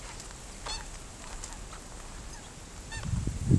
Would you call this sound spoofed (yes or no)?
no